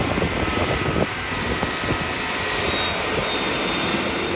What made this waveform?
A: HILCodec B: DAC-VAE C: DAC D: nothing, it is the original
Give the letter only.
D